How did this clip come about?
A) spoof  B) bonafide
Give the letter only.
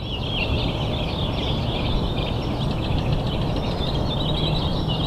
A